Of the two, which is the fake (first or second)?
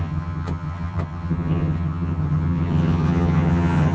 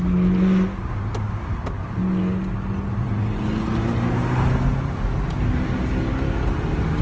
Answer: first